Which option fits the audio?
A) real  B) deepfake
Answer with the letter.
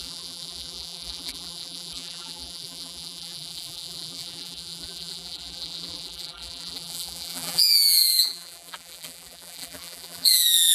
B